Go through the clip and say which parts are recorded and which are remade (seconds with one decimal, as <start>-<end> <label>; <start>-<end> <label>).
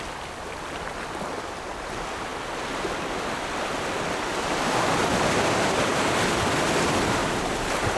0.0-5.9 recorded; 5.9-6.5 remade; 6.5-7.2 recorded; 7.2-8.0 remade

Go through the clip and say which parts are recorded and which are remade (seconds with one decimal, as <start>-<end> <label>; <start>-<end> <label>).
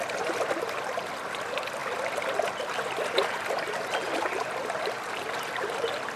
0.0-6.2 recorded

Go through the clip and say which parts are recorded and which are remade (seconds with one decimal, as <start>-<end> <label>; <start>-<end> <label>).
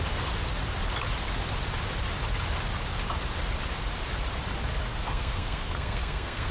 0.0-4.9 recorded; 4.9-6.5 remade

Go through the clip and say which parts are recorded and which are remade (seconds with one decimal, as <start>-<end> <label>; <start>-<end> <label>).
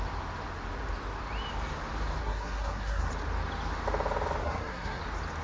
0.0-2.2 recorded; 2.2-3.1 remade; 3.1-4.4 recorded; 4.4-5.0 remade; 5.0-5.4 recorded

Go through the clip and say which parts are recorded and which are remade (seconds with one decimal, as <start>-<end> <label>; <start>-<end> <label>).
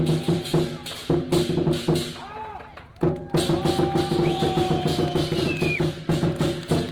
0.0-3.2 remade; 3.2-4.1 recorded; 4.1-6.9 remade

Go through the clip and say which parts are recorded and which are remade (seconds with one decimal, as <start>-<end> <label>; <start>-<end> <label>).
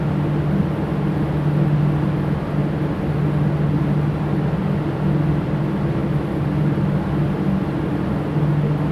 0.0-8.9 recorded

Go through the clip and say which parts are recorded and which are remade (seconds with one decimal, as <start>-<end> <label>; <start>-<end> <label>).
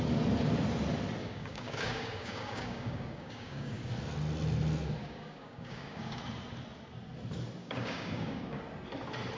0.0-1.2 recorded; 1.2-3.9 remade; 3.9-5.0 recorded; 5.0-6.2 remade; 6.2-7.6 recorded; 7.6-8.6 remade; 8.6-9.4 recorded